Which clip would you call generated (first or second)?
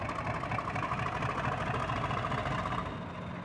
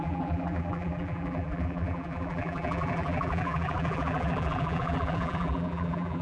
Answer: second